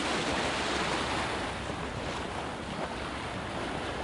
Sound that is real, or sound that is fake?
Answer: real